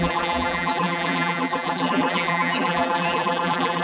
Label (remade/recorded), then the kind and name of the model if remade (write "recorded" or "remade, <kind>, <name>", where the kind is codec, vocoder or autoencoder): remade, vocoder, BigVGAN v2